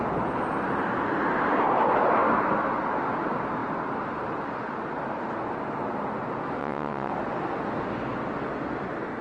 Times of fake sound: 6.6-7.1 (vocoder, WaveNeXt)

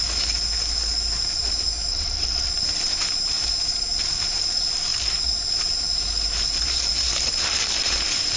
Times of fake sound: 1.9-2.5 (vocoder, WaveNeXt)

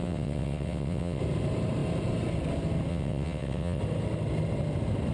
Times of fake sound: 0.0-1.2 (vocoder, WaveNeXt); 2.9-3.8

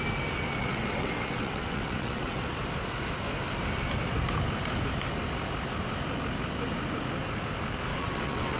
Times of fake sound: 0.6-2.4 (vocoder, WaveNeXt); 7.9-8.6

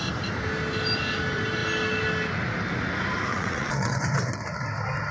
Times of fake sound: 3.3-4.0 (vocoder, WaveNeXt)

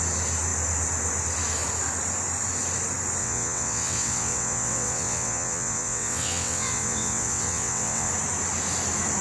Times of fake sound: 3.2-8.1 (vocoder, WaveNeXt)

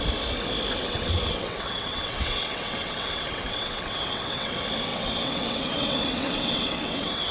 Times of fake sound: 0.8-4.5 (vocoder, WaveNeXt); 4.9-7.3

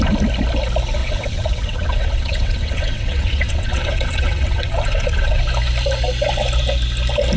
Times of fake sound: 1.0-5.4 (vocoder, WaveNeXt)